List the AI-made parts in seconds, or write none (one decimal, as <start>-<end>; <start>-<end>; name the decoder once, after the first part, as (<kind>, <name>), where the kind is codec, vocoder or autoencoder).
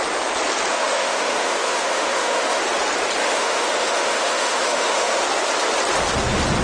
0.7-2.6 (autoencoder, DAC-VAE); 3.2-5.2